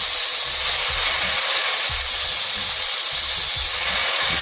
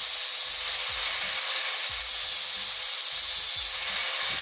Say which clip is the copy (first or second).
first